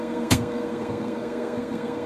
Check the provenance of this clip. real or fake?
fake